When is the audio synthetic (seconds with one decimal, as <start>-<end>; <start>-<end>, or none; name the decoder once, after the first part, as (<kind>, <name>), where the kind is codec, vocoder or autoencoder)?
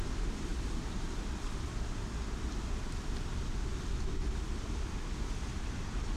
none